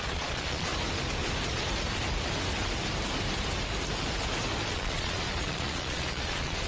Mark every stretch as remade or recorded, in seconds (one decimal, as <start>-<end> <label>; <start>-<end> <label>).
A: 0.0-0.7 remade; 0.7-4.7 recorded; 4.7-6.7 remade